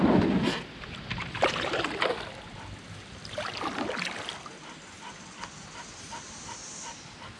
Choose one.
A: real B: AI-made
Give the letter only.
A